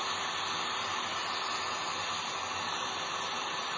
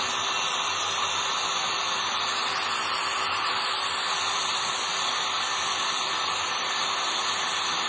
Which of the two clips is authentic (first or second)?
first